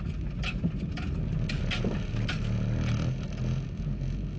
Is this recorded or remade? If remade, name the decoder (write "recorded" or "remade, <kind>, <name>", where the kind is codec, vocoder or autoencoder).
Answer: recorded